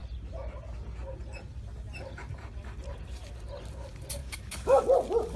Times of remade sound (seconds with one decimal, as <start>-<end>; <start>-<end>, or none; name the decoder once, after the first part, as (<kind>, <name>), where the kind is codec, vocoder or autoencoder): 4.2-4.8 (autoencoder, DAC-VAE)